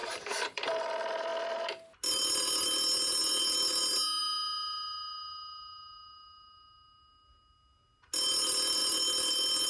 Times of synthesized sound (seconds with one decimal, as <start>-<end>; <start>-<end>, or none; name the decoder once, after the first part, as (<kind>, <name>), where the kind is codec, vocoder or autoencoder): 0.0-0.7 (vocoder, BigVGAN v2)